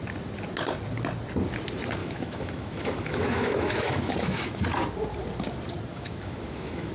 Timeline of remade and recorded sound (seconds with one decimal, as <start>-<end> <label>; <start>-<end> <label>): 0.0-2.0 recorded; 2.0-4.6 remade; 4.6-5.9 recorded; 5.9-6.9 remade